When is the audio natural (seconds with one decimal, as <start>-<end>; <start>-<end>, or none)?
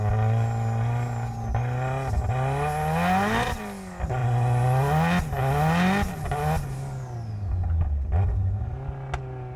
0.0-9.6